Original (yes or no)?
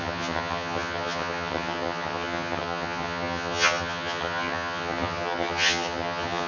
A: no